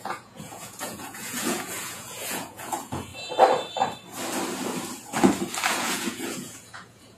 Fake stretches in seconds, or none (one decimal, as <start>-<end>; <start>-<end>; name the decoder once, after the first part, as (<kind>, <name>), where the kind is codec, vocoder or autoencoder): 0.0-3.1 (vocoder, Vocos); 5.7-7.2